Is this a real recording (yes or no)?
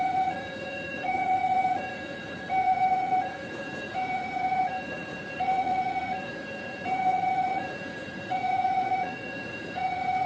no